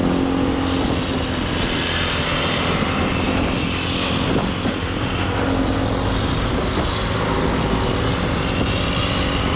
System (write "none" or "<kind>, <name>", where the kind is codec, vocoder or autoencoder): none